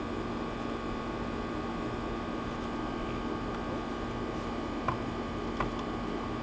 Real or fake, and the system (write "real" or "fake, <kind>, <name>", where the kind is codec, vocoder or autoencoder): real